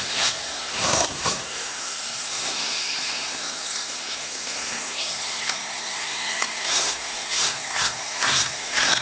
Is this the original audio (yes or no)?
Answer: no